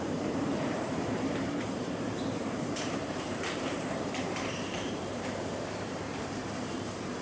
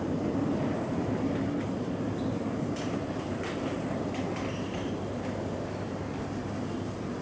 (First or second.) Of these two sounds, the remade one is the first